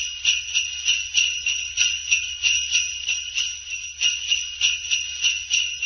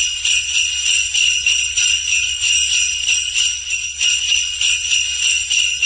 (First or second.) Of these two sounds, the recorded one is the first